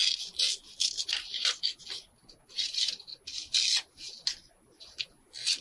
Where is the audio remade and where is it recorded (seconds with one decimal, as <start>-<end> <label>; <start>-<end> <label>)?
0.0-5.6 recorded